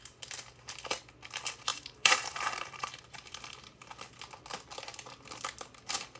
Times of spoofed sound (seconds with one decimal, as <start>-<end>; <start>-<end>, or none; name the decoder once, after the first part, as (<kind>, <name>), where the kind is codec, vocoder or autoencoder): 1.7-3.0 (vocoder, BigVGAN v2)